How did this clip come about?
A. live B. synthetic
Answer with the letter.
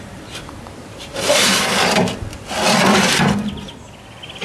A